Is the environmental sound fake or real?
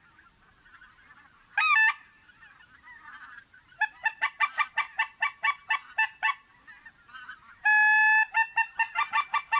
real